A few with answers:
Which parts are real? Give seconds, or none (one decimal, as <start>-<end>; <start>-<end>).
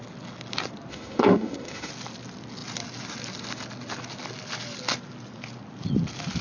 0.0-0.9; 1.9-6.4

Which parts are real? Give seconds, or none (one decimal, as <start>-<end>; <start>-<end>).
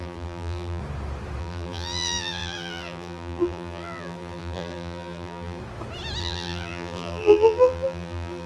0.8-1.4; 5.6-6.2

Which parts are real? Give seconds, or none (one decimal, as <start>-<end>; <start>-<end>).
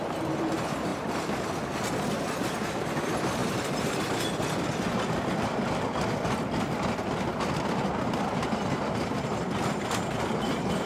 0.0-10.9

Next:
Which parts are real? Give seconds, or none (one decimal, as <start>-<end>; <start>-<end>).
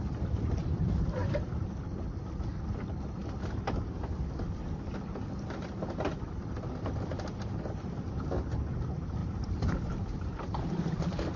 0.0-9.2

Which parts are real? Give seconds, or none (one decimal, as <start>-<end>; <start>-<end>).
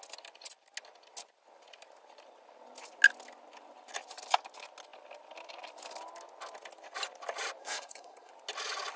0.0-7.6; 8.3-9.0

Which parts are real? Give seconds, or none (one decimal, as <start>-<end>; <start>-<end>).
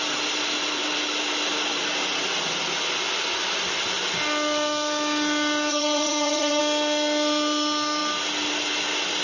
0.0-5.7; 6.6-9.2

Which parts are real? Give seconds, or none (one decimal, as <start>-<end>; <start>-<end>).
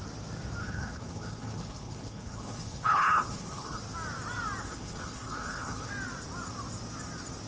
0.0-0.6; 3.8-4.6; 5.9-7.5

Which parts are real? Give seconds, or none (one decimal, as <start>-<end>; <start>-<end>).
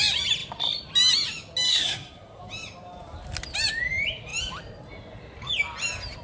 0.0-1.7; 2.4-6.2